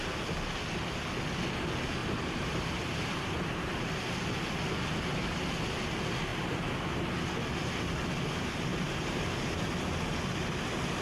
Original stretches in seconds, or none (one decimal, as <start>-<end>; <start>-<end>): 0.0-2.0; 3.3-6.3; 7.1-8.7; 9.3-11.0